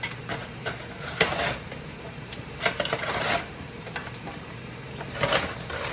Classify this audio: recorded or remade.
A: remade